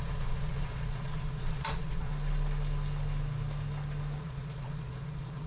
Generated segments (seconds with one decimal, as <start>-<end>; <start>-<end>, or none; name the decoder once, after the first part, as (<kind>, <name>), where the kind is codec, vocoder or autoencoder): 0.0-2.1 (vocoder, Vocos); 4.2-5.5